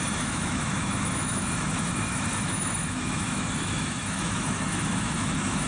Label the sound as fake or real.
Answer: fake